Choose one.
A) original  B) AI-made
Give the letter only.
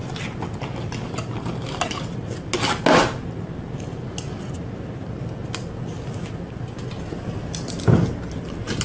A